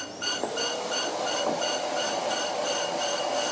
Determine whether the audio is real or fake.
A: real